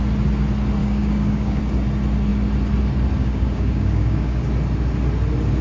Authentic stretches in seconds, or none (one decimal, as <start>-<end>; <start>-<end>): 0.0-0.8; 1.6-3.2; 4.5-5.6